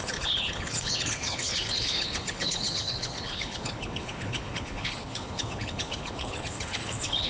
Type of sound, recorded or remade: remade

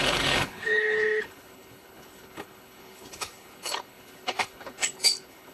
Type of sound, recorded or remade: remade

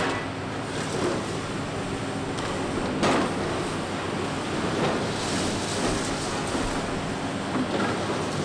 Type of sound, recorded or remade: recorded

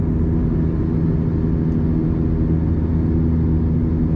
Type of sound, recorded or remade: recorded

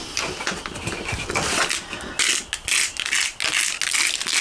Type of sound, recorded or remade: recorded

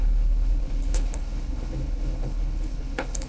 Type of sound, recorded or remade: remade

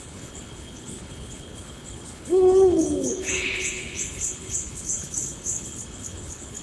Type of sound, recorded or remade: remade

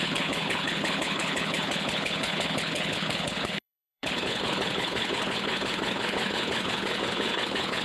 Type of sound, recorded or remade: remade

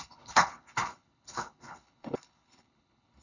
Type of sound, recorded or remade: remade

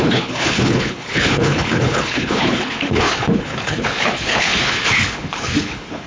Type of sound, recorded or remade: remade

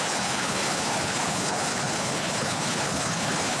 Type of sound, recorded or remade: remade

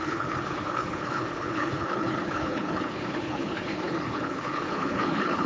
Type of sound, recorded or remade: remade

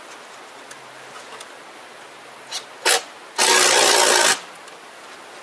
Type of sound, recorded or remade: recorded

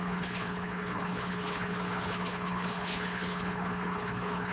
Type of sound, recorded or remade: remade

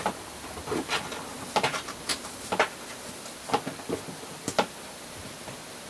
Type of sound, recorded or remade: recorded